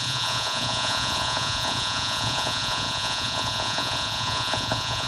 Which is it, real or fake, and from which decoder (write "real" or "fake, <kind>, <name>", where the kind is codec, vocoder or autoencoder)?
fake, vocoder, Vocos